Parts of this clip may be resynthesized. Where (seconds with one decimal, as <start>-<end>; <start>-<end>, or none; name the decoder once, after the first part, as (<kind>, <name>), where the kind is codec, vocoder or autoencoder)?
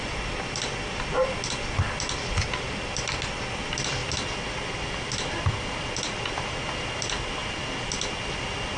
none